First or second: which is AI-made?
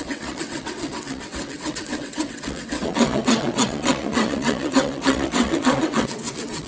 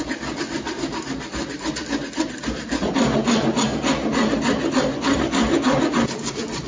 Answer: first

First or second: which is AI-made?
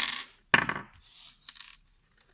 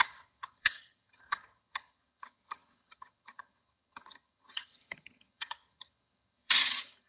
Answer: second